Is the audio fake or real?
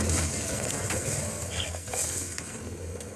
fake